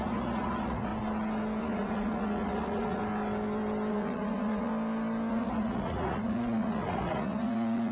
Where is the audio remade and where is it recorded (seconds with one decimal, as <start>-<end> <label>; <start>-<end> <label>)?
0.0-0.9 remade; 0.9-1.6 recorded; 1.6-3.0 remade; 3.0-3.9 recorded; 3.9-4.7 remade; 4.7-5.3 recorded; 5.3-7.9 remade